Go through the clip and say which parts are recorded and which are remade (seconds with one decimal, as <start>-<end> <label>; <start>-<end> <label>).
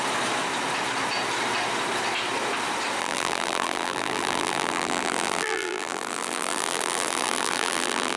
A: 0.0-3.0 recorded; 3.0-8.2 remade